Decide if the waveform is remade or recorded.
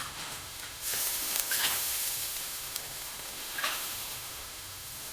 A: remade